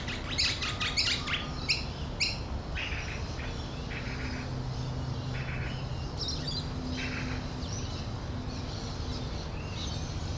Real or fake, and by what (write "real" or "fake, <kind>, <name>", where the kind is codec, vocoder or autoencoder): real